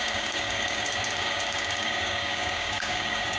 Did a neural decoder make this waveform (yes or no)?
yes